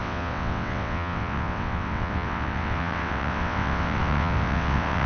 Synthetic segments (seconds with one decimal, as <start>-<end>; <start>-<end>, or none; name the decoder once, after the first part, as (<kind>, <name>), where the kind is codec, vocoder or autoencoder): 0.0-5.1 (vocoder, WaveNeXt)